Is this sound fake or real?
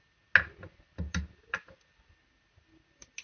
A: real